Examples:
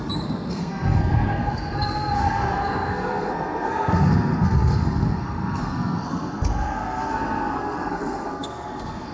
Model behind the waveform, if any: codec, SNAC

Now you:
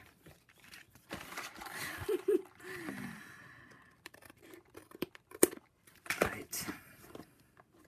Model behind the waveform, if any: vocoder, BigVGAN v2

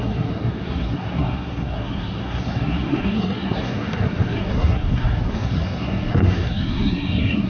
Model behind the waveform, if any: codec, SNAC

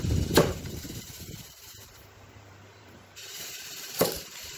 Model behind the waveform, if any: vocoder, BigVGAN v2